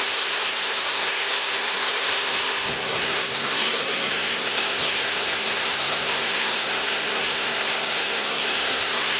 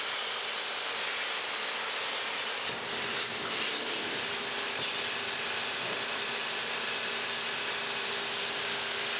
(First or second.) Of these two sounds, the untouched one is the second